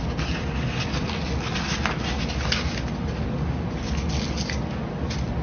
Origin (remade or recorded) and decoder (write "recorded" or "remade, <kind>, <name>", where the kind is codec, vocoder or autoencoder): recorded